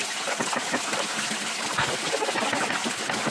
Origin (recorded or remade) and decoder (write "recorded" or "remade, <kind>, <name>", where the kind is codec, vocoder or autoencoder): recorded